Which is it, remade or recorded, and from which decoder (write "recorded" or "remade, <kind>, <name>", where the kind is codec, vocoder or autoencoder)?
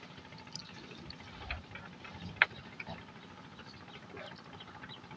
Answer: recorded